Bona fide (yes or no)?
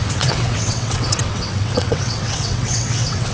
no